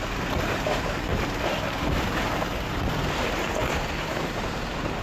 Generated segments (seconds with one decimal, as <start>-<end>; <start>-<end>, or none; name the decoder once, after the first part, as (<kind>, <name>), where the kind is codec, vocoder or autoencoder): none